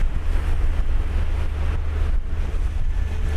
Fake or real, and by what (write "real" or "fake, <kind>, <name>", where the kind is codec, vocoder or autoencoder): real